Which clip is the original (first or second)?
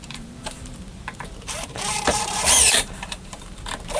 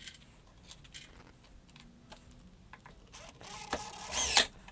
second